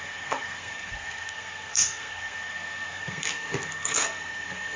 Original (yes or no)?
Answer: no